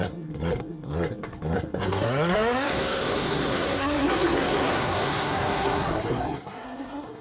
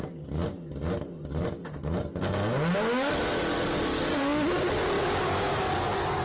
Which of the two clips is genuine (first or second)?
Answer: second